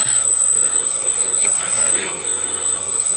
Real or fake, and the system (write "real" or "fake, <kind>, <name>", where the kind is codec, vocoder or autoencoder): fake, codec, SNAC